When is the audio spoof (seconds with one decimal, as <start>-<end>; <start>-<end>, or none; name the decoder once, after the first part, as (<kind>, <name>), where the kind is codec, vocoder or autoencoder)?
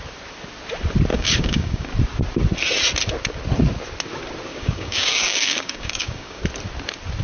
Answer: 1.1-1.9 (codec, DAC); 4.5-6.4